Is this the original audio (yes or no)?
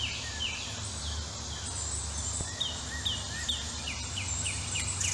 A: yes